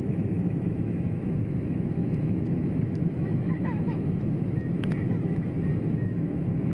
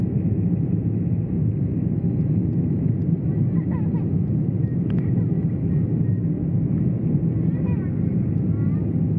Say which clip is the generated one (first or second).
first